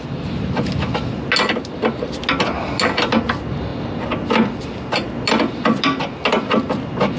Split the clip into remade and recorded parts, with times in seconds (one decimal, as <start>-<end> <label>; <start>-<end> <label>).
0.0-7.2 recorded